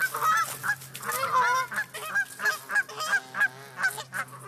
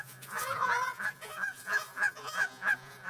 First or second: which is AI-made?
second